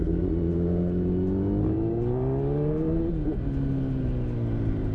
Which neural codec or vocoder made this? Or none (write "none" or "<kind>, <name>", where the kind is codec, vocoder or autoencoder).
none